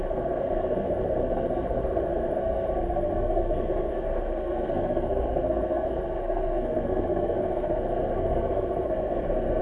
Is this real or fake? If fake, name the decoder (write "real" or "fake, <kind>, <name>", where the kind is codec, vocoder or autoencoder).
fake, codec, SNAC